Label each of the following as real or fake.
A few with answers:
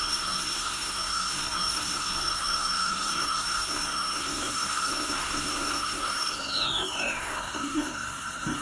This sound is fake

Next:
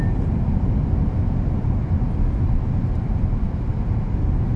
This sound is real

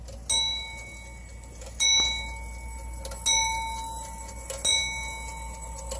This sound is real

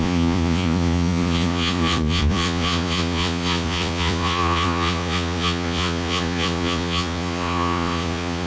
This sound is fake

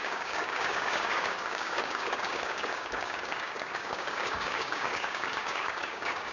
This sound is fake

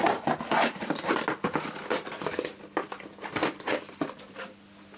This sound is real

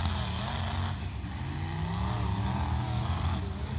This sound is real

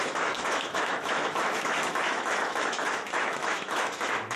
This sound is fake